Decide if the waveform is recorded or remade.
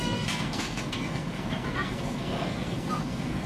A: remade